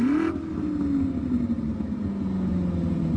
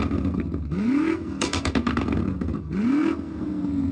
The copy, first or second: second